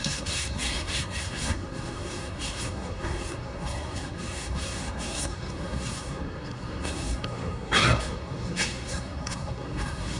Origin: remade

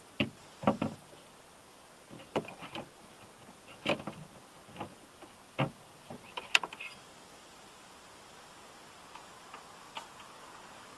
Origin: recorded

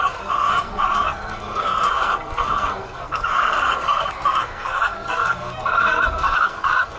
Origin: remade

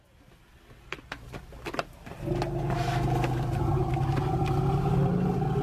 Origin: recorded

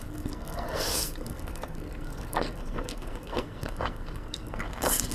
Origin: remade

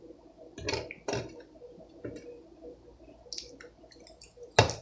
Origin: recorded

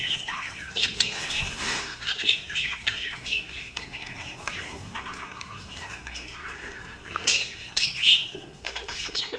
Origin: remade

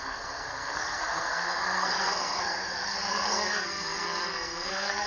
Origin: remade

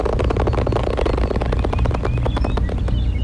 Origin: recorded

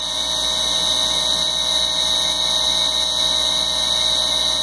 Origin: recorded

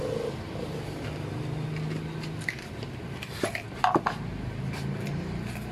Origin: recorded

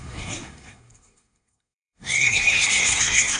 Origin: remade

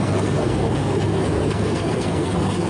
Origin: remade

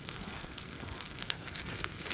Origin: remade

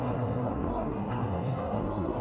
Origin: remade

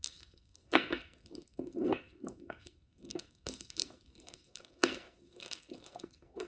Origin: remade